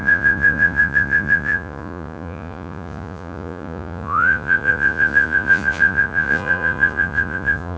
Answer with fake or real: fake